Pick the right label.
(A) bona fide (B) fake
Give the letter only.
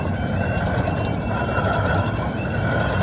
A